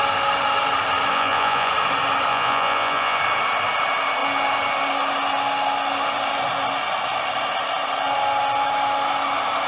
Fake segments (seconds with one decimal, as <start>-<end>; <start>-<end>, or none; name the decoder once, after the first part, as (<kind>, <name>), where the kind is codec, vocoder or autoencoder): 1.1-1.7 (vocoder, Vocos); 2.3-3.2